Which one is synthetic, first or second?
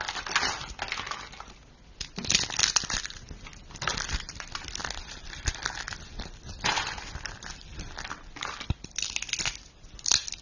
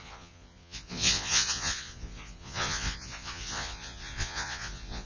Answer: second